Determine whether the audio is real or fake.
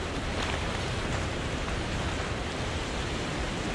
real